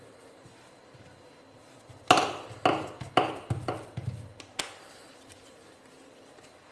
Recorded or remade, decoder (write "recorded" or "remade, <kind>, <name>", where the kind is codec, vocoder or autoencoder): recorded